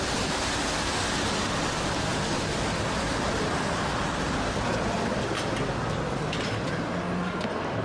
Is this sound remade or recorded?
recorded